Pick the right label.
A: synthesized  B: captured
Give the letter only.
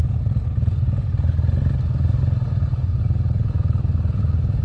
B